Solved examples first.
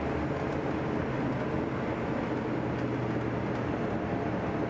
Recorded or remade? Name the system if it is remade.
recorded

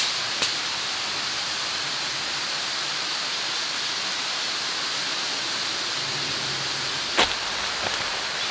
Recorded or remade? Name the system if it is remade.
recorded